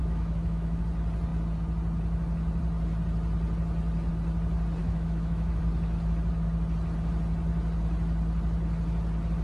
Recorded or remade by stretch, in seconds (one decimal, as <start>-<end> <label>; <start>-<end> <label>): 0.0-0.8 remade; 0.8-4.8 recorded; 4.8-5.6 remade; 5.6-9.4 recorded